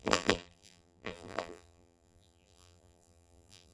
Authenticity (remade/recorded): remade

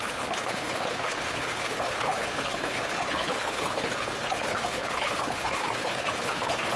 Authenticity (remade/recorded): remade